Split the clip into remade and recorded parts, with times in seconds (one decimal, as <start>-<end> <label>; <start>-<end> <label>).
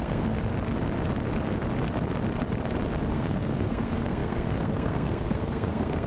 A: 0.0-0.5 remade; 0.5-3.1 recorded; 3.1-6.1 remade